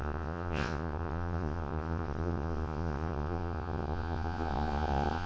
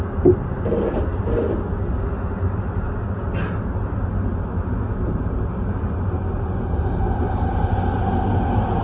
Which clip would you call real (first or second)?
second